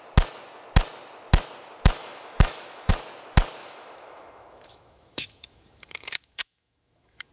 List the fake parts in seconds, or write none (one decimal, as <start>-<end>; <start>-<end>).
2.0-2.9; 3.6-7.3